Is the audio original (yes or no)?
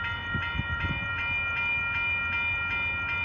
yes